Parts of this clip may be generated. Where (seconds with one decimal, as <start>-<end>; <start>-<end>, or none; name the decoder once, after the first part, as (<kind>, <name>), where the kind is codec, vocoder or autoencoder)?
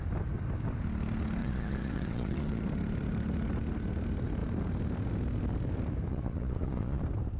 1.4-2.6 (vocoder, Vocos); 6.1-7.0